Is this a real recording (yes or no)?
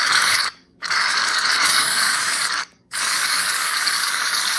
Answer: no